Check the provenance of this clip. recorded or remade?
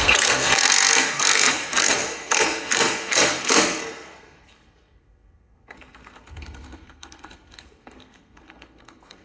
remade